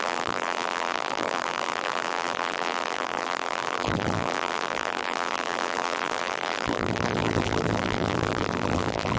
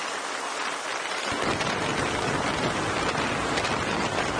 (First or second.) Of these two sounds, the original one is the second